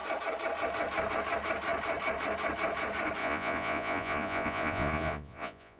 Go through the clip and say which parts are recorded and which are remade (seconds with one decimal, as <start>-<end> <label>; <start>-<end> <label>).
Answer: 0.0-3.2 recorded; 3.2-5.8 remade